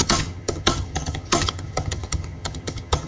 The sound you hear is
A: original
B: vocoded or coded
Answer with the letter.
B